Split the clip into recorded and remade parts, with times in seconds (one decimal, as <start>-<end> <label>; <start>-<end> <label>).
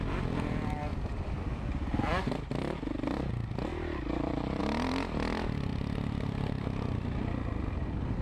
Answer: 0.0-0.9 recorded; 0.9-3.3 remade; 3.3-3.7 recorded; 3.7-4.6 remade; 4.6-5.7 recorded; 5.7-6.5 remade; 6.5-8.2 recorded